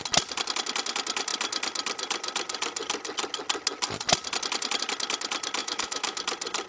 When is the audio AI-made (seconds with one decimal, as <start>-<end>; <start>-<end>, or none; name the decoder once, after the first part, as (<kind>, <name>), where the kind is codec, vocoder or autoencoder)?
5.6-6.2 (autoencoder, DAC-VAE)